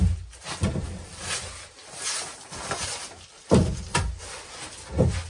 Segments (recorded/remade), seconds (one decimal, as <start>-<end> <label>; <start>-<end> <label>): 0.0-5.3 recorded